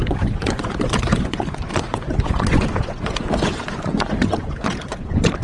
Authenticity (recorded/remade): remade